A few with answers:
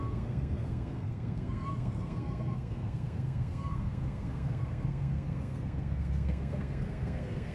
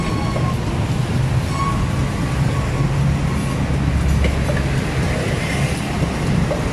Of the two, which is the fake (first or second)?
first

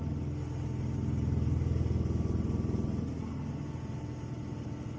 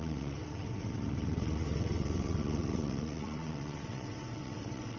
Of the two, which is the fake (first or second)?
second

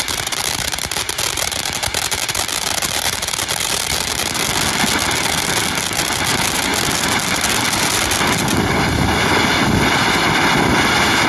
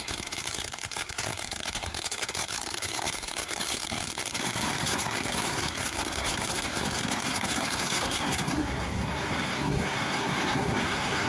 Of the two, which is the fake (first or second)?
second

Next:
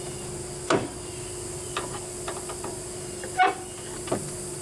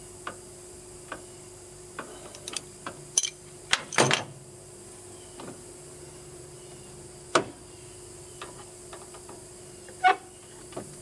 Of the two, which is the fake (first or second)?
second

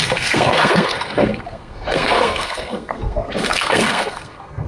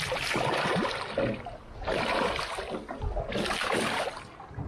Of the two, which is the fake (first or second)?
first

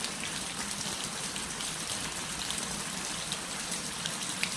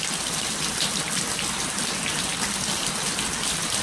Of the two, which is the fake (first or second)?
first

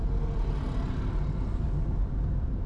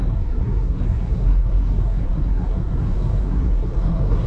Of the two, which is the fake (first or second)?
second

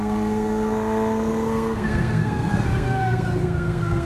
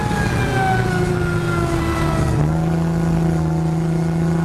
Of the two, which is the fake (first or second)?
first